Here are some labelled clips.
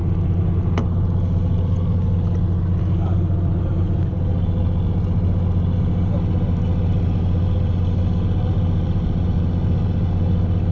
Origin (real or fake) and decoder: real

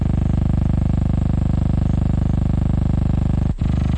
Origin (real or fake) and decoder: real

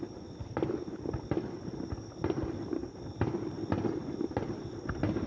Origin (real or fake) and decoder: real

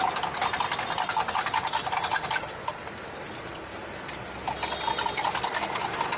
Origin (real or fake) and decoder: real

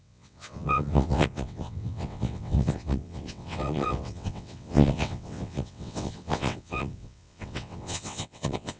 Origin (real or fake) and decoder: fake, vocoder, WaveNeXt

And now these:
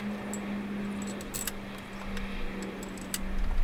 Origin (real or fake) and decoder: real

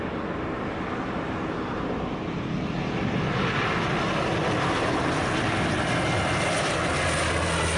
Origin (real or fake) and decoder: real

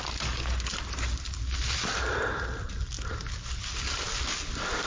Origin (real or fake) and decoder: real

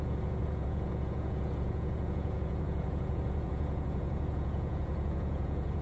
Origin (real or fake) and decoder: fake, vocoder, Vocos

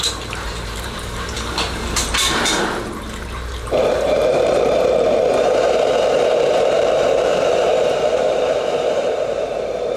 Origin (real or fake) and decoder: fake, vocoder, BigVGAN v2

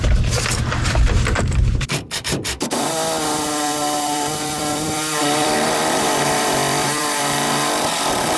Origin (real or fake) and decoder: fake, vocoder, BigVGAN v2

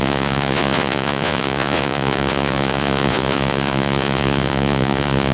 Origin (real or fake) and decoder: fake, vocoder, Vocos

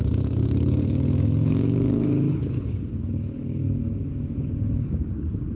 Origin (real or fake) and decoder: fake, codec, DAC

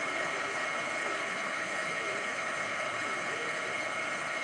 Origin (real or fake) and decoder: fake, codec, HILCodec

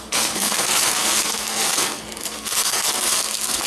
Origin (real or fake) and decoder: fake, codec, SNAC